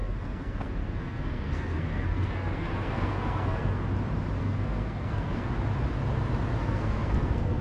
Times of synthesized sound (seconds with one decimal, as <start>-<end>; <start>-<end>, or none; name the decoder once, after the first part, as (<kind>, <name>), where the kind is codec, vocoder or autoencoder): 0.0-3.8 (codec, SNAC); 4.4-5.5; 6.6-7.6